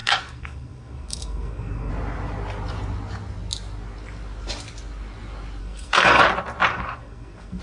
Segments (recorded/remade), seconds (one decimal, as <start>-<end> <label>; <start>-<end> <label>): 0.0-1.9 remade; 1.9-5.6 recorded; 5.6-6.2 remade; 6.2-6.7 recorded; 6.7-7.6 remade